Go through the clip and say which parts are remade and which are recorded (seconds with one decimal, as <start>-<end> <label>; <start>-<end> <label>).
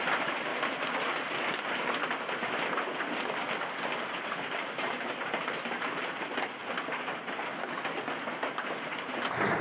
0.0-0.5 remade; 0.5-4.2 recorded; 4.2-6.6 remade; 6.6-9.6 recorded